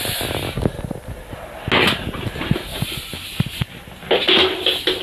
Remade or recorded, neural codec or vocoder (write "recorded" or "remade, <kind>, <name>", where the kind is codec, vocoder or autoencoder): recorded